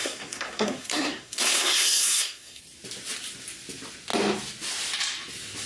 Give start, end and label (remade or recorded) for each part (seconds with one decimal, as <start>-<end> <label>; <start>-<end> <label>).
0.0-2.6 remade; 2.6-5.7 recorded